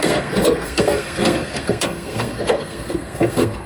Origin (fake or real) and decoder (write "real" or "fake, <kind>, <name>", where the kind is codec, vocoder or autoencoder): fake, codec, SNAC